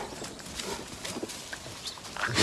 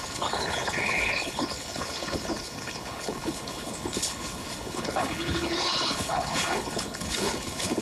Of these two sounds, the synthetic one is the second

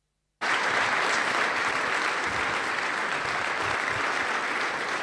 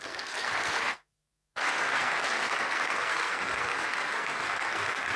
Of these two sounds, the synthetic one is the second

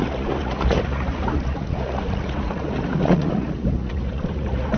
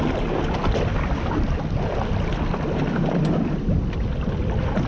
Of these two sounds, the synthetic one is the first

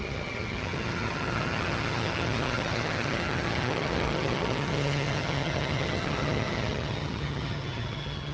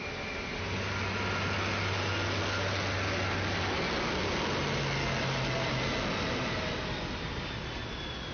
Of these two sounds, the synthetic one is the first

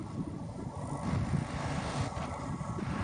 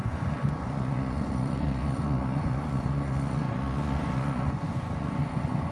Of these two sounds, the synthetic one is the second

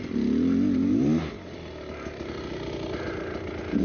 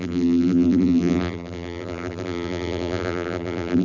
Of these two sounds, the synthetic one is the second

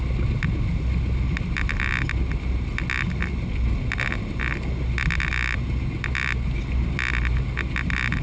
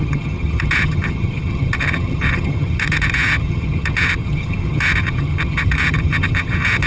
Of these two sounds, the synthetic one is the second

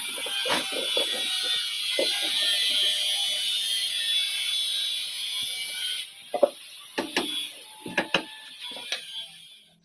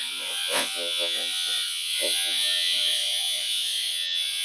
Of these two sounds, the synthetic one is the second